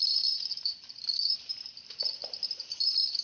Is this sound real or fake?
real